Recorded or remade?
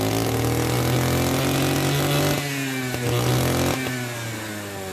recorded